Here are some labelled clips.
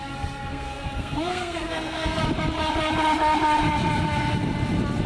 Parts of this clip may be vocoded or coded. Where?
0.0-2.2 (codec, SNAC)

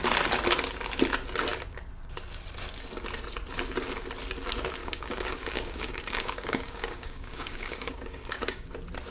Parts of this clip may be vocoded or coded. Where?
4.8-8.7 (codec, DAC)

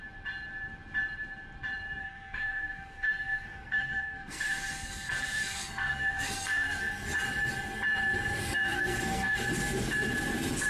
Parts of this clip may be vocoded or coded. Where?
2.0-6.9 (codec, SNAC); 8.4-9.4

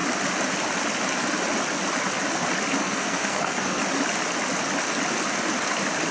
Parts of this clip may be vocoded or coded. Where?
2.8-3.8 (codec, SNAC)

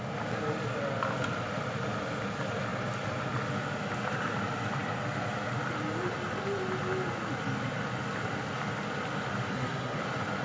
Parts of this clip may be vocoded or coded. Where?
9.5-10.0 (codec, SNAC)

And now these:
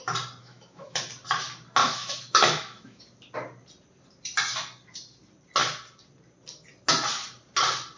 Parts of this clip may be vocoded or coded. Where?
0.4-1.0 (autoencoder, DAC-VAE); 1.8-3.0